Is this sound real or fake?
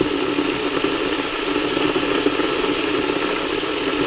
real